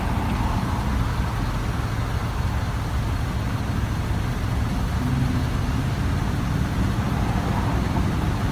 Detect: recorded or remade recorded